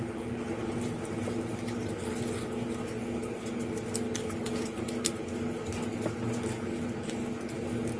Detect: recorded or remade recorded